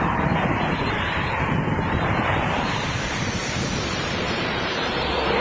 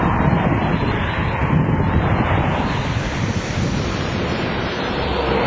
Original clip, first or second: second